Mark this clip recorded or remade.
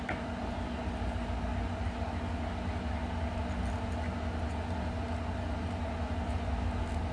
recorded